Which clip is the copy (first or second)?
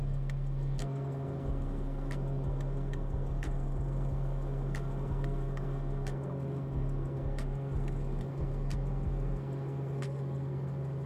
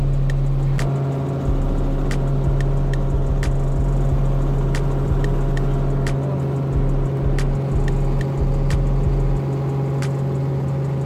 first